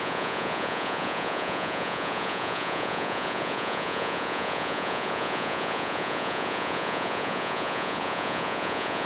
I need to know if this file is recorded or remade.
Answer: remade